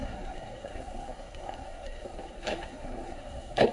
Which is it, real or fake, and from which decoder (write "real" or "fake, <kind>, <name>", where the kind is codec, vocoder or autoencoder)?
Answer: fake, codec, SNAC